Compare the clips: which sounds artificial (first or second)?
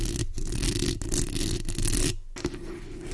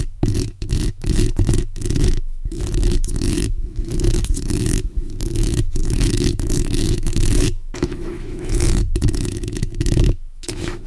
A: second